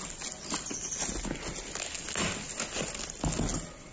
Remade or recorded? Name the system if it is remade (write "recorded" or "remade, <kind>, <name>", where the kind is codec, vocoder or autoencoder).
recorded